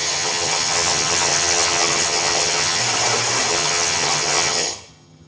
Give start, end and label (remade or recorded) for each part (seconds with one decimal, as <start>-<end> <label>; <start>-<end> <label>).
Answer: 0.0-2.8 remade; 2.8-3.5 recorded; 3.5-5.3 remade